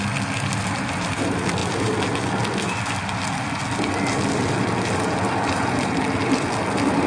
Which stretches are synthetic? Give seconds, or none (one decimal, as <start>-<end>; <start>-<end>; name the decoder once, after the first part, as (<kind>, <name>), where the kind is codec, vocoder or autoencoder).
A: none